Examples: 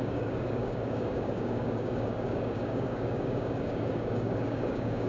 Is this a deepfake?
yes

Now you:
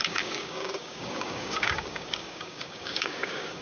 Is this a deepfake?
yes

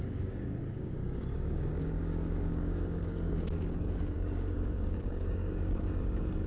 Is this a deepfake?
yes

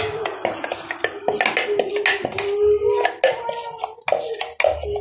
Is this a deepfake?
no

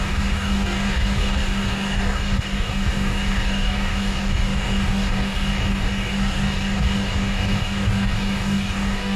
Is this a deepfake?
yes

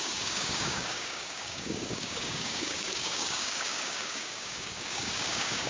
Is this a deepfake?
yes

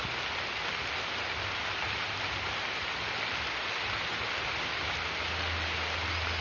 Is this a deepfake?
no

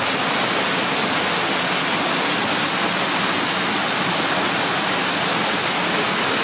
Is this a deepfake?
no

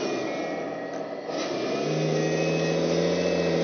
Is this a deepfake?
no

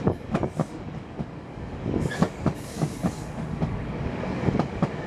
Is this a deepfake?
yes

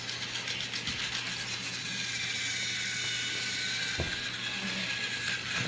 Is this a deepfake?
no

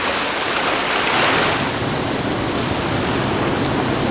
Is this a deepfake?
no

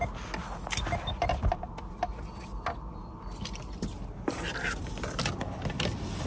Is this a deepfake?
no